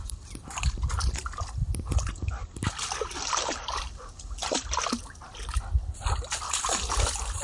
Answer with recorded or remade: recorded